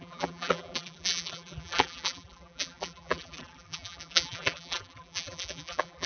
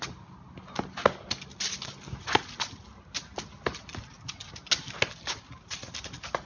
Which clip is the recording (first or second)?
second